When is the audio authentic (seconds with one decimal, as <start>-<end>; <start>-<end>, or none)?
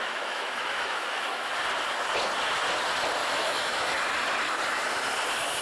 1.5-3.2; 4.0-5.6